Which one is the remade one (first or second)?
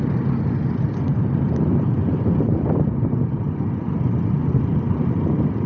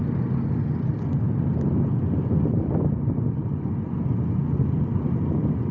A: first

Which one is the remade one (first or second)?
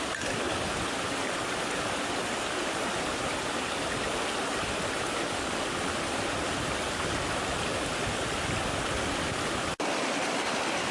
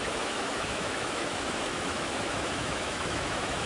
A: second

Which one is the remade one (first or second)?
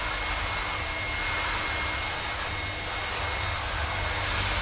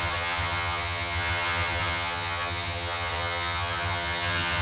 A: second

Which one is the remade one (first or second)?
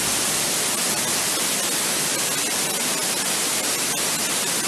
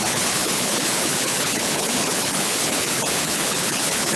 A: second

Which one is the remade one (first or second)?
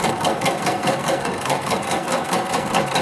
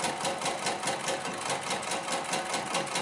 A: first